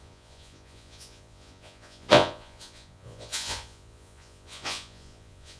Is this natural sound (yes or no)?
no